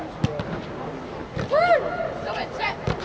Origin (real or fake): real